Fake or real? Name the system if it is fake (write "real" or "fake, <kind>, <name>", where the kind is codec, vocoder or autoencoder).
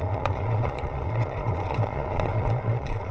fake, vocoder, Vocos